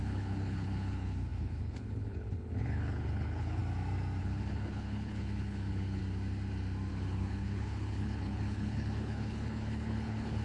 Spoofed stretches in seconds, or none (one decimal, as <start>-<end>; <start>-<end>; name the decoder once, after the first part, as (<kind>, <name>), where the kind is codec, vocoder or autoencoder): 0.0-3.6 (codec, HILCodec); 4.2-6.0; 6.9-10.4